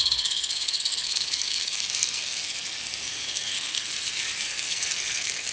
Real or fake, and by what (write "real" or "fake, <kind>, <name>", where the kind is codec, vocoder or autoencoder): fake, codec, SNAC